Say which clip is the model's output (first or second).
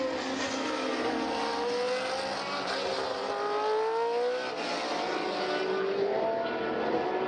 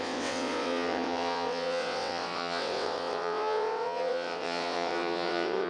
second